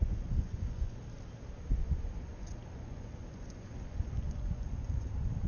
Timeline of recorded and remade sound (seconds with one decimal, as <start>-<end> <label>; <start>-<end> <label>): 0.0-1.0 remade; 1.0-1.8 recorded; 1.8-5.1 remade; 5.1-5.5 recorded